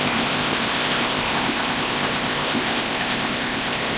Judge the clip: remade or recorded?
remade